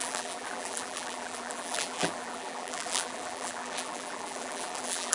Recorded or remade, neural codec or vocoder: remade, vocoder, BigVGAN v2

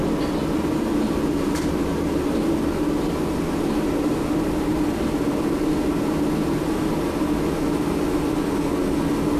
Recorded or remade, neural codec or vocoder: recorded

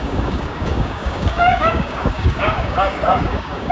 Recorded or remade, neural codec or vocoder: remade, codec, DAC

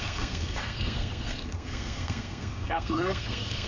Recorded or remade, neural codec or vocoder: remade, codec, SNAC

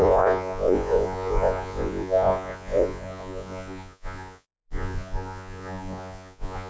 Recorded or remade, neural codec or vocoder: remade, vocoder, Vocos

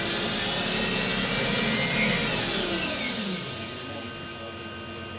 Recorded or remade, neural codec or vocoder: recorded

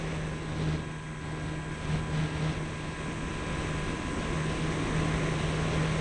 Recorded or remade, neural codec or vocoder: recorded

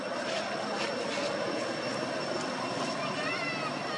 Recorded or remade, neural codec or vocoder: recorded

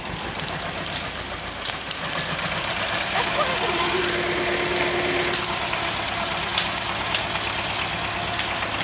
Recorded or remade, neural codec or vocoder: recorded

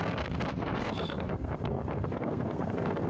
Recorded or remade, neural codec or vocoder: remade, codec, SNAC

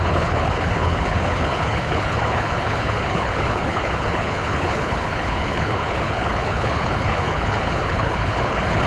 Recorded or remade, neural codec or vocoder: remade, codec, HILCodec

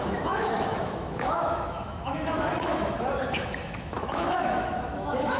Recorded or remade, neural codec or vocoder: remade, autoencoder, DAC-VAE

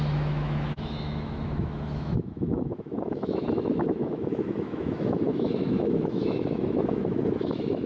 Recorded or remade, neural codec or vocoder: remade, autoencoder, DAC-VAE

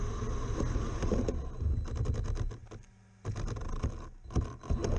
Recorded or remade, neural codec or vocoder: recorded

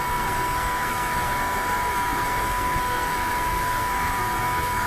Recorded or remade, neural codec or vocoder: remade, codec, SNAC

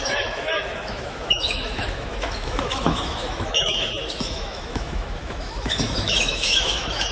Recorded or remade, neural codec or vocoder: remade, autoencoder, DAC-VAE